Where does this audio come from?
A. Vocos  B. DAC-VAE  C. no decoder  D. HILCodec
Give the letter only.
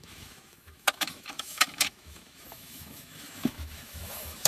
B